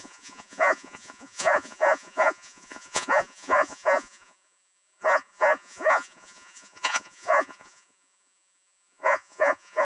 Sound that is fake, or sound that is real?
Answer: fake